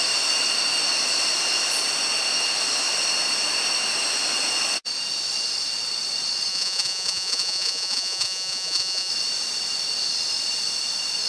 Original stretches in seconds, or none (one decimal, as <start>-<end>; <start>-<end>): 0.0-6.5; 9.1-11.3